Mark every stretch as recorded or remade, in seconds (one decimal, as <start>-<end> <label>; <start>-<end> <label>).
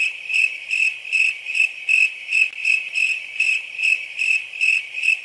0.0-5.2 recorded